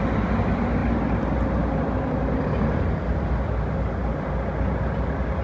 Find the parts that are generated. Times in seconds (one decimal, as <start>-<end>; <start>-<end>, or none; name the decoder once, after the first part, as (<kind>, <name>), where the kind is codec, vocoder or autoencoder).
none